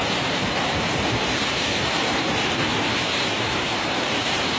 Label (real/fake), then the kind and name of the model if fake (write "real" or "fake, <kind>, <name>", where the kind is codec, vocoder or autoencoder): fake, vocoder, BigVGAN v2